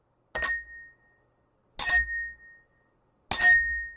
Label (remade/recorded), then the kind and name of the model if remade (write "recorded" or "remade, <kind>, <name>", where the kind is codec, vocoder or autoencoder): recorded